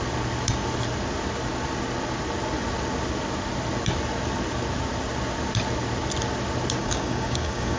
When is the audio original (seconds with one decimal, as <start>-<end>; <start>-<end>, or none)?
0.0-6.8